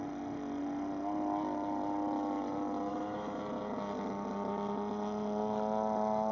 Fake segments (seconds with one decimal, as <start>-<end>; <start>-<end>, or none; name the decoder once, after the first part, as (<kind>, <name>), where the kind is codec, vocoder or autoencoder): 2.9-3.4 (autoencoder, DAC-VAE)